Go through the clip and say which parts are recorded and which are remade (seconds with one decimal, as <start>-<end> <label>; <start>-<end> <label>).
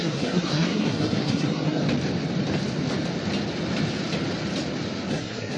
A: 0.0-1.8 remade; 1.8-5.1 recorded; 5.1-5.6 remade